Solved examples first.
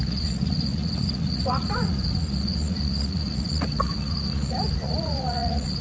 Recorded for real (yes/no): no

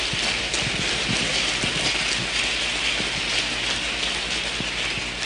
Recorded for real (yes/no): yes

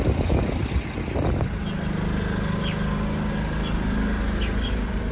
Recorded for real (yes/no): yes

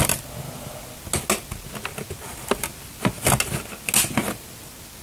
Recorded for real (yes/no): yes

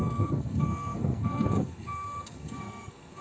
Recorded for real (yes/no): no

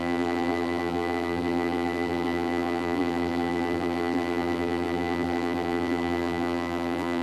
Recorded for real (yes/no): no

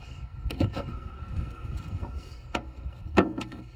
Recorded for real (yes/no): no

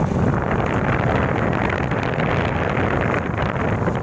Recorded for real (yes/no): yes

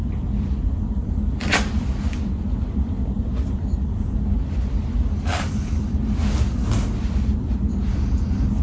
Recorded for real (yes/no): yes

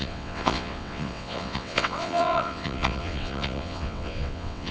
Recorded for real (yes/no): no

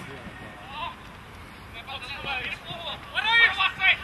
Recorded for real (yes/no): yes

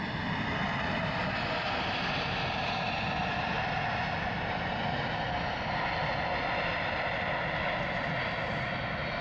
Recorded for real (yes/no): yes